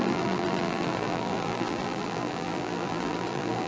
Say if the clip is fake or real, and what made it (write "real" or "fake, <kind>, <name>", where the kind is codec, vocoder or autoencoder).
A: fake, vocoder, BigVGAN v2